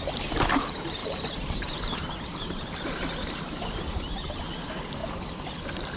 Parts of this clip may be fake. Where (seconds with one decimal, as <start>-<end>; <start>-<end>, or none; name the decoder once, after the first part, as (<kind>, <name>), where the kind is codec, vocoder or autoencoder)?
1.0-4.4 (vocoder, BigVGAN v2)